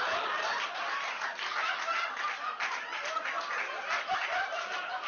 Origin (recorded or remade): recorded